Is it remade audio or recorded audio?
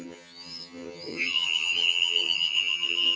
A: remade